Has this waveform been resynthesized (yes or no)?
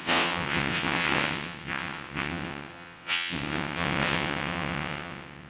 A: yes